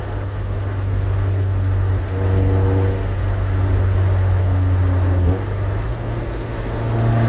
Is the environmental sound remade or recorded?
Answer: recorded